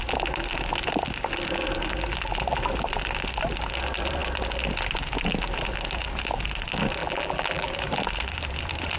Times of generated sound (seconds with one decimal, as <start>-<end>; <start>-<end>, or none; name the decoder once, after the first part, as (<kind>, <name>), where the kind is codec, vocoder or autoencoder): 7.0-7.7 (vocoder, BigVGAN v2)